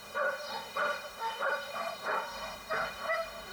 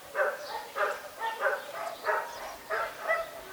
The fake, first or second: first